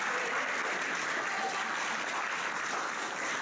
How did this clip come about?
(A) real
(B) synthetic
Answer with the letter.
A